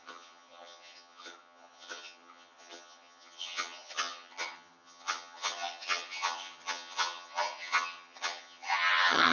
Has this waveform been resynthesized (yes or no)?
yes